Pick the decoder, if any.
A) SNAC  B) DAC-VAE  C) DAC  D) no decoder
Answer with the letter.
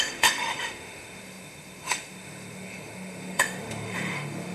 B